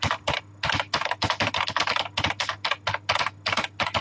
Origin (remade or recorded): recorded